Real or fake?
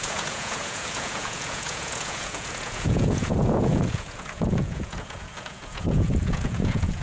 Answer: fake